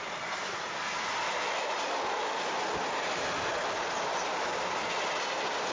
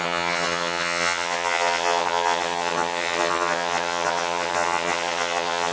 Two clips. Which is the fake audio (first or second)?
second